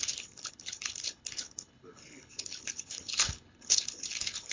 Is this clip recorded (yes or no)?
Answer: no